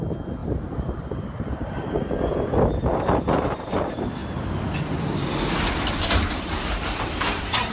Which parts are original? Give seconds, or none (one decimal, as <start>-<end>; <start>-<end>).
0.0-0.4; 2.8-7.7